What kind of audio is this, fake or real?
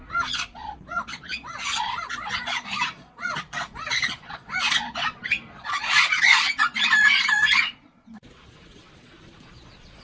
fake